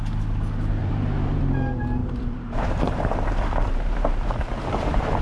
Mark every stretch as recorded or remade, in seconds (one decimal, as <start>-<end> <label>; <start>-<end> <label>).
0.0-0.8 recorded; 0.8-1.4 remade; 1.4-2.0 recorded; 2.0-5.2 remade